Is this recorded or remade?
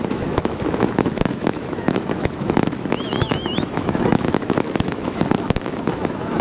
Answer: remade